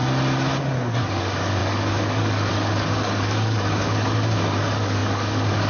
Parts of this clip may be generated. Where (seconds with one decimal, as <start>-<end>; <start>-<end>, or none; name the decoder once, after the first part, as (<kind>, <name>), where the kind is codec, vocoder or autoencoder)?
1.1-5.7 (codec, DAC)